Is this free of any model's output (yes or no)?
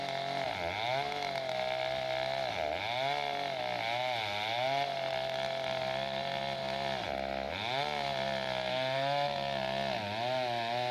yes